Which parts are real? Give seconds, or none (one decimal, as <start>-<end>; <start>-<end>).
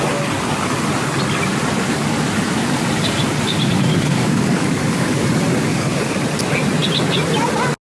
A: 0.0-3.9; 5.2-5.7; 6.2-7.9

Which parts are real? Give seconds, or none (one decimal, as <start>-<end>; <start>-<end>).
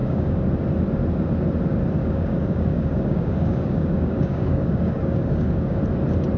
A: 0.5-2.0; 5.8-6.4